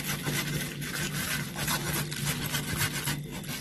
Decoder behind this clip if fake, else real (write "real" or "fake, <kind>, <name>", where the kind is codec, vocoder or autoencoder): real